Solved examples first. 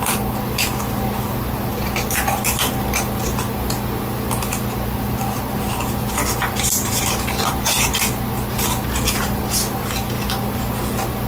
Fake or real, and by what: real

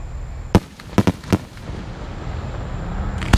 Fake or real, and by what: real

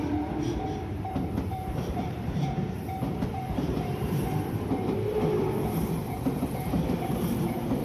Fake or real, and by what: fake, vocoder, BigVGAN v2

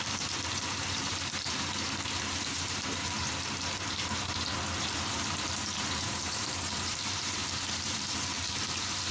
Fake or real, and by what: fake, vocoder, BigVGAN v2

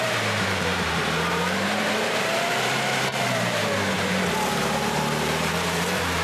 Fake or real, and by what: fake, vocoder, BigVGAN v2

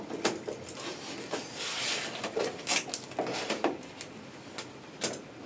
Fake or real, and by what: real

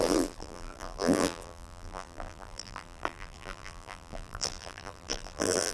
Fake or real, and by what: fake, vocoder, BigVGAN v2